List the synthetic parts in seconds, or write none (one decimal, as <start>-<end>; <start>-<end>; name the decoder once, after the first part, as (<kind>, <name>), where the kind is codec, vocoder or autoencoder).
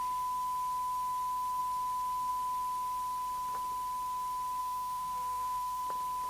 4.6-5.8 (codec, SNAC)